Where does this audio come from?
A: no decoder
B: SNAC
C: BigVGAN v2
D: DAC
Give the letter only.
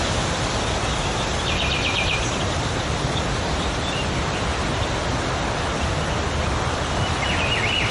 A